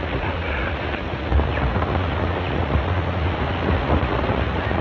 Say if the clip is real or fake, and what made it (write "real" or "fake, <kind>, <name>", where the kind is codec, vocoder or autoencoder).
fake, vocoder, Vocos